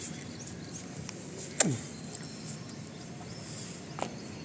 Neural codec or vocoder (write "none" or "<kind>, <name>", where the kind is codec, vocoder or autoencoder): none